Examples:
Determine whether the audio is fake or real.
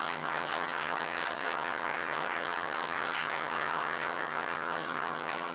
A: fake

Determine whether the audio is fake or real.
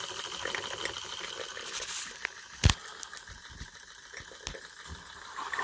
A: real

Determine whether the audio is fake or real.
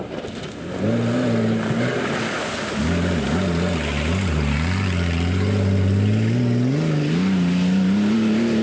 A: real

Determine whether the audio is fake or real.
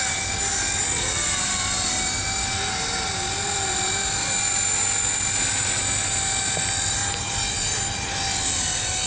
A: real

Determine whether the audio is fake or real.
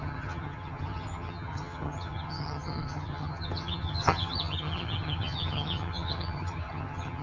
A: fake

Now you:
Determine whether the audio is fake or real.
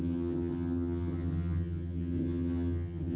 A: fake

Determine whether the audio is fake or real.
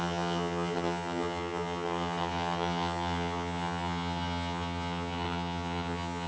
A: fake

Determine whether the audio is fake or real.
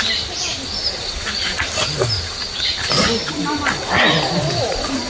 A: real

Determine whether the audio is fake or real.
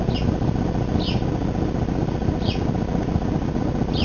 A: real